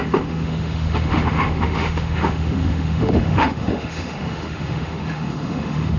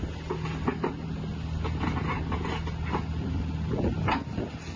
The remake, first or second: first